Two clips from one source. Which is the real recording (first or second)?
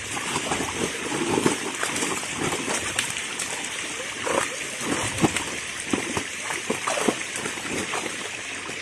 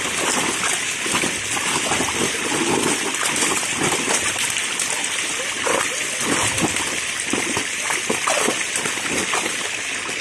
second